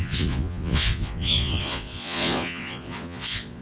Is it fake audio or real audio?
fake